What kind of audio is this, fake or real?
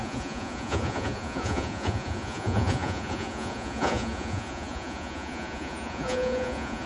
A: fake